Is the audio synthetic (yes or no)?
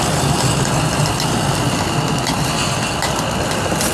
no